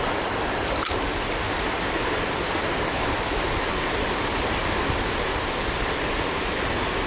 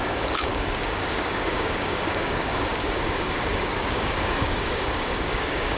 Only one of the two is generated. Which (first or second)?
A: second